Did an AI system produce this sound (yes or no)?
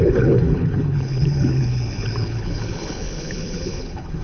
yes